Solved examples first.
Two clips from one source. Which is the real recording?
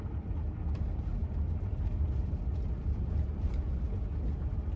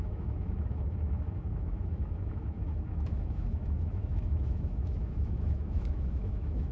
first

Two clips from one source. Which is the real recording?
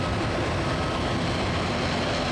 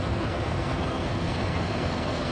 first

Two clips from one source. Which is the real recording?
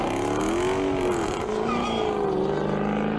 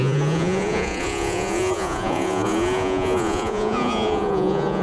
first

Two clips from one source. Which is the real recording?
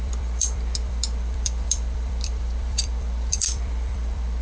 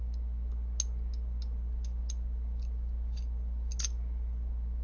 second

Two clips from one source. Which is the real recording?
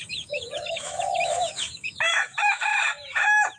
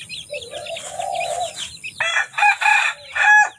second